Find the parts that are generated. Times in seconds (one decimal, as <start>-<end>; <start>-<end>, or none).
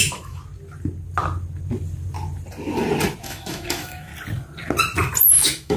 0.0-0.4; 3.2-4.1; 5.3-5.8